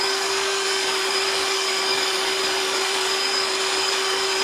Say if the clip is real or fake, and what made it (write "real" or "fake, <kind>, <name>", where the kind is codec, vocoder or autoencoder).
fake, codec, DAC